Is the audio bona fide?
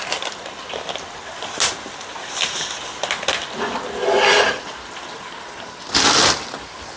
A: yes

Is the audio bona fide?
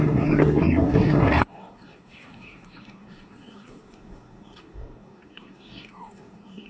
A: no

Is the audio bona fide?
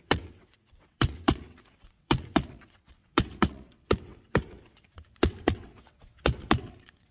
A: no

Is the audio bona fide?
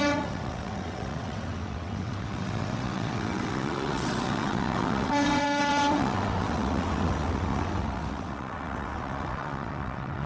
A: no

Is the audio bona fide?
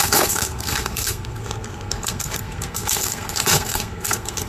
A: no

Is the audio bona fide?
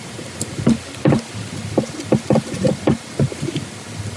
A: yes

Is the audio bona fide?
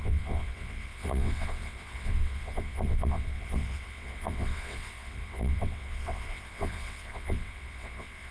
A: no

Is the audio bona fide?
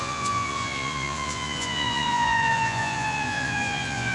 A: no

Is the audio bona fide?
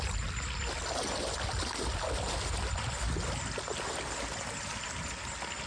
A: yes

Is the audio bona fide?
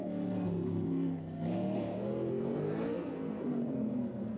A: no